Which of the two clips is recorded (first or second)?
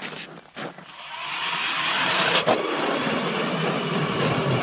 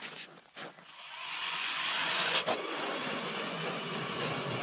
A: first